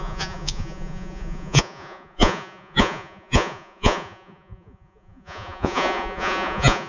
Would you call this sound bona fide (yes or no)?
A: no